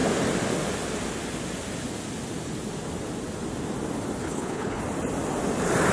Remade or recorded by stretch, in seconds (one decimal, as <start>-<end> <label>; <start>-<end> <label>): 0.0-4.2 recorded; 4.2-4.8 remade; 4.8-5.9 recorded